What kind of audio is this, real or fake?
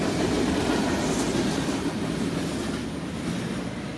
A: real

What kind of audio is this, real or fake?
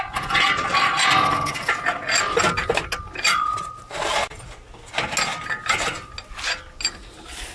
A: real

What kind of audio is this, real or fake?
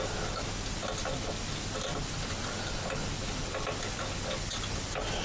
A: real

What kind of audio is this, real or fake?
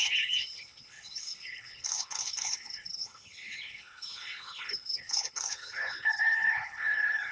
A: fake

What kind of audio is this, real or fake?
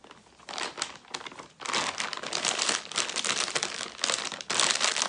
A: real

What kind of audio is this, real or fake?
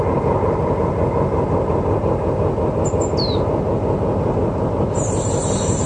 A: real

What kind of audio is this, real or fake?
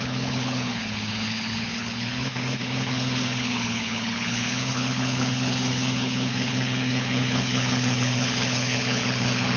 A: fake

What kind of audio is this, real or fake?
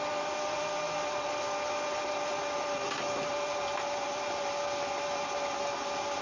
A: real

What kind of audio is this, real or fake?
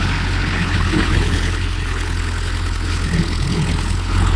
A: fake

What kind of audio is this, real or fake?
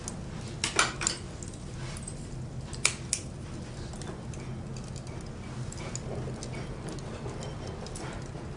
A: real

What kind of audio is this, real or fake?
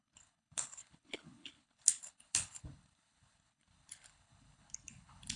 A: fake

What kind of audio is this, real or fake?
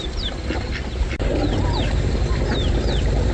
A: real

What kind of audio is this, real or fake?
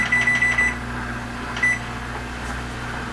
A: real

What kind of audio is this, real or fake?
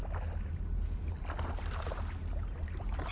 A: real